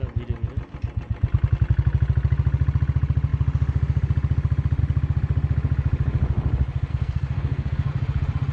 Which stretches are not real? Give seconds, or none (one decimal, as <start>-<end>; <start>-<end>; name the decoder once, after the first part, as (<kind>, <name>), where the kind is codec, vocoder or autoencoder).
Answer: 6.9-7.9 (codec, SNAC)